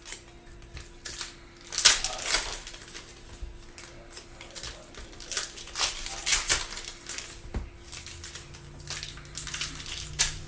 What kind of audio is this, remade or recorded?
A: recorded